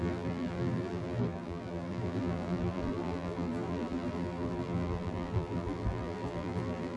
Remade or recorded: remade